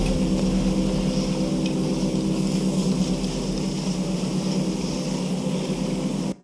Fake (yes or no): no